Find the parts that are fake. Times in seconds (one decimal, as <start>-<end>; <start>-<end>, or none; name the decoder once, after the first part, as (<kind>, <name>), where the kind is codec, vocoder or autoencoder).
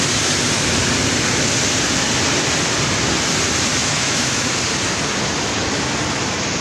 3.8-4.5 (autoencoder, DAC-VAE)